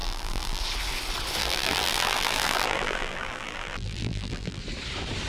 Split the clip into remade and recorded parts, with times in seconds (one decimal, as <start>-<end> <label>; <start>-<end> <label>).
0.0-0.6 remade; 0.6-1.4 recorded; 1.4-4.6 remade; 4.6-5.3 recorded